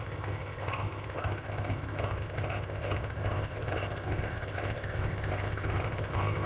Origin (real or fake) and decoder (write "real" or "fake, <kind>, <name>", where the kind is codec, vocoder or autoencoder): fake, codec, ZipCodec